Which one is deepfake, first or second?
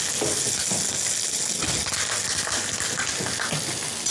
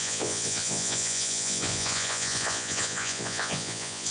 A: second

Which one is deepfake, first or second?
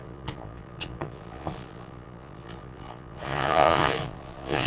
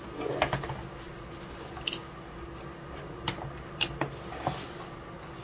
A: first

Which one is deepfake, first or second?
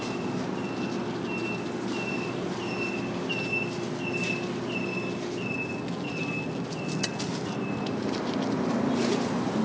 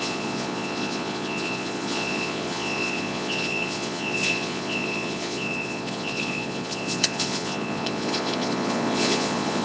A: second